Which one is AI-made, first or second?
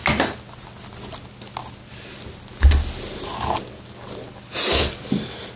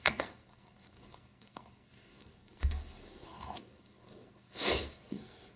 second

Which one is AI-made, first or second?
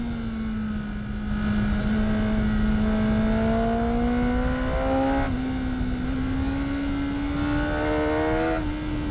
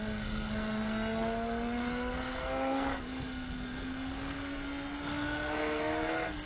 second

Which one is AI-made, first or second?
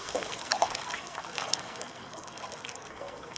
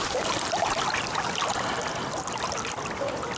first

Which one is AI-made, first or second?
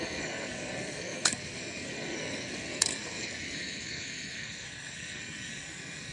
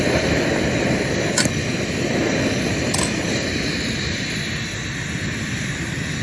first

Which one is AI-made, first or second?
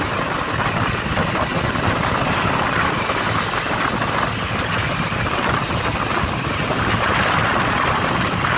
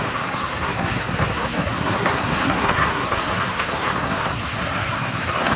second